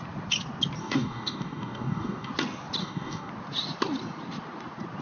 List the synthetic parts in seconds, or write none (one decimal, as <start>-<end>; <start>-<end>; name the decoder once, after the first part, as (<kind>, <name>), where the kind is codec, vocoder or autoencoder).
0.8-2.3 (codec, DAC); 2.8-3.3